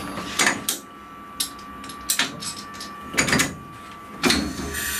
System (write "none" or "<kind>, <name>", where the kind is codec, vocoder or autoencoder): none